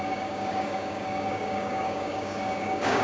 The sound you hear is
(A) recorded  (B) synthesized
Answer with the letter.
B